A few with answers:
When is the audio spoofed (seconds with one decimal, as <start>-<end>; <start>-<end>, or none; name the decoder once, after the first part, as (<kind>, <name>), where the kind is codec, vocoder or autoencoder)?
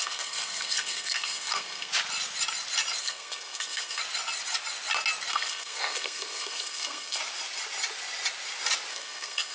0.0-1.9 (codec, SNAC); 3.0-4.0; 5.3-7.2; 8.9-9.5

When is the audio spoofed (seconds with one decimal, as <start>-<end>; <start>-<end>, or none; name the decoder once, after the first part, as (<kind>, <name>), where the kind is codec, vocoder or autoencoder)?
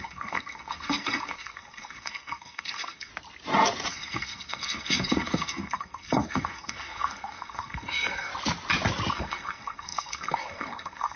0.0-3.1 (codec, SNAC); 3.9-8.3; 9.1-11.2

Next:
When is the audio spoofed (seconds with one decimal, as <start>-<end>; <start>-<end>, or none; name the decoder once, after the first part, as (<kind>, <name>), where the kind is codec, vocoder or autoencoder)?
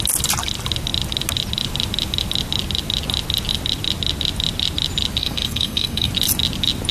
5.2-6.1 (codec, SNAC)